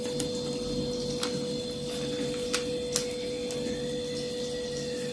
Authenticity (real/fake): real